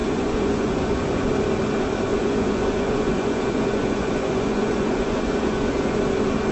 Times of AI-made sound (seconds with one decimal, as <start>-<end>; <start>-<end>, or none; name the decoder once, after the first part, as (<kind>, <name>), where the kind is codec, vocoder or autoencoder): 0.0-1.3 (vocoder, Vocos); 2.1-6.0